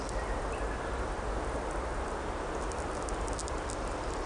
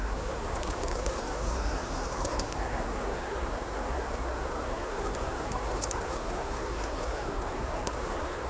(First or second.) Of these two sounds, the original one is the first